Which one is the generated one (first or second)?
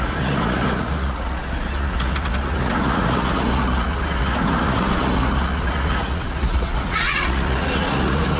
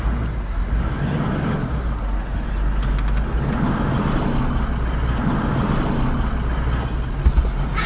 first